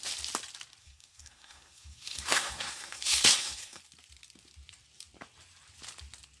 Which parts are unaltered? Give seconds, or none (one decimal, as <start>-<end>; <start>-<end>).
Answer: 0.0-0.8; 3.8-6.4